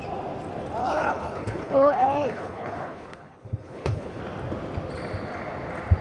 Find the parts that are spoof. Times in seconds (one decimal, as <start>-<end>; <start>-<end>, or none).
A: 0.8-4.2